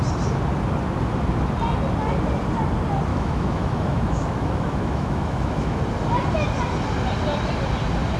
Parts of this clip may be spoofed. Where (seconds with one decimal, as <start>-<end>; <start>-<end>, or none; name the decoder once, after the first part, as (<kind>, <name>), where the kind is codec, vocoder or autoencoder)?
3.1-5.8 (autoencoder, DAC-VAE)